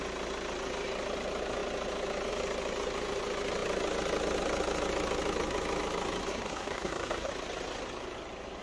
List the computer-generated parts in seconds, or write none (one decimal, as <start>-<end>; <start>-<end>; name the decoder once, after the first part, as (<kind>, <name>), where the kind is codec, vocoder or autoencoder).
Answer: 6.3-7.3 (codec, SNAC)